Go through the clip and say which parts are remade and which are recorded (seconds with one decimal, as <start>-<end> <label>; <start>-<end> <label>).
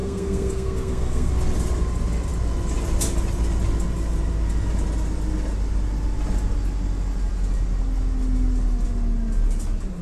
0.0-1.3 remade; 1.3-10.0 recorded